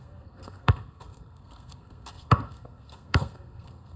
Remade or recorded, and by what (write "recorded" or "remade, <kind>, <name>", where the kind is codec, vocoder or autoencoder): remade, codec, SNAC